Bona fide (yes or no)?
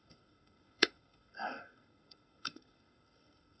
no